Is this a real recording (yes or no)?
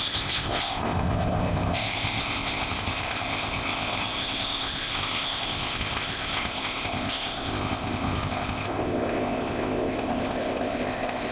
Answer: no